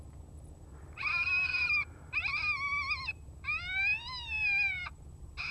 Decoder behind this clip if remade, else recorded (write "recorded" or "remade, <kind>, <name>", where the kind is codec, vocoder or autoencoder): recorded